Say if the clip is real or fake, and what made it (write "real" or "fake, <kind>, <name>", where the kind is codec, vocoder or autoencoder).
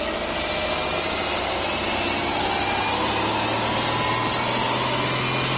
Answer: real